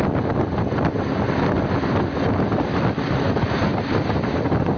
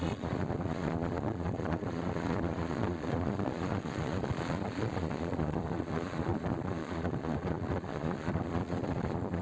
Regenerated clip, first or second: second